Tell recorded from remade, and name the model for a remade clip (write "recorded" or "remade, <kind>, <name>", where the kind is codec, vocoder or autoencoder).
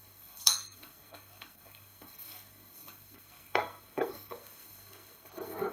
remade, codec, SNAC